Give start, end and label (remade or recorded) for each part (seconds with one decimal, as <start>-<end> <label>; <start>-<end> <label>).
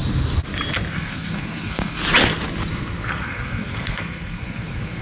0.0-0.9 recorded; 0.9-2.0 remade; 2.0-2.7 recorded; 2.7-5.0 remade